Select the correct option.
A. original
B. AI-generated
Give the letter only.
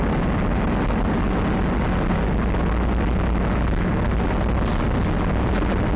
A